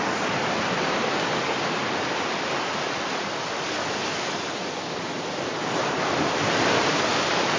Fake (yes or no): no